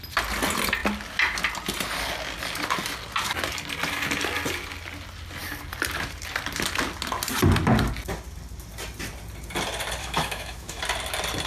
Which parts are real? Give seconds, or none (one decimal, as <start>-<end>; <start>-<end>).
0.0-10.0; 10.8-11.5